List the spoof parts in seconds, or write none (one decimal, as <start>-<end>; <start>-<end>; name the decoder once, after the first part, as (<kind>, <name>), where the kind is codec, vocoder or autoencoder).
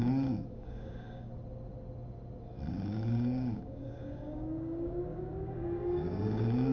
0.0-1.3 (codec, DAC); 2.7-6.7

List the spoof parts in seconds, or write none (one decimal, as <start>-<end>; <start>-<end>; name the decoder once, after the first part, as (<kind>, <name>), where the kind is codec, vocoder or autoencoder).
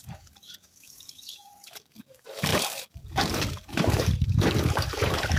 0.0-5.4 (codec, DAC)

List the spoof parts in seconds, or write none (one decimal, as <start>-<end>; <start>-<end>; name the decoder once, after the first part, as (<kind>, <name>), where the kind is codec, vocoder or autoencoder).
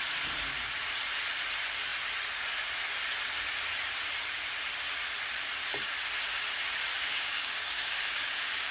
6.9-8.7 (codec, DAC)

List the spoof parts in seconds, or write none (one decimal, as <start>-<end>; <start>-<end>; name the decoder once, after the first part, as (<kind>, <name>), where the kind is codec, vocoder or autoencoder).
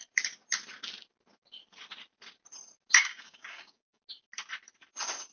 3.0-4.0 (codec, DAC)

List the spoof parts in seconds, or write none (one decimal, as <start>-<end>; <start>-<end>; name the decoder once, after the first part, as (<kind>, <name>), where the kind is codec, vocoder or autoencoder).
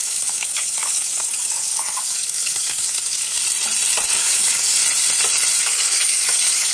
0.0-3.4 (codec, DAC); 4.1-4.8; 5.6-6.7